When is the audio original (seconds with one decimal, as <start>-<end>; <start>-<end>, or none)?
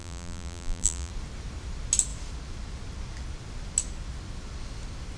1.1-5.2